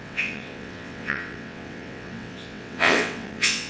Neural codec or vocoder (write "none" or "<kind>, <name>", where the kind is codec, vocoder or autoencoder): vocoder, WaveNeXt